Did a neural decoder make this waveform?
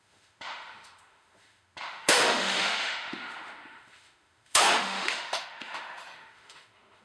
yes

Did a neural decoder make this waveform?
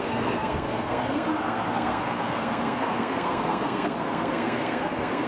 yes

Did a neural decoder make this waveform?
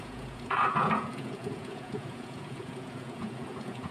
yes